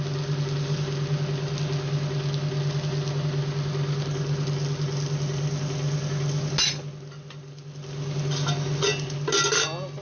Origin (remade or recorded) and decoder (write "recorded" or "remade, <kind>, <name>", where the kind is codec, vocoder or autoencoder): recorded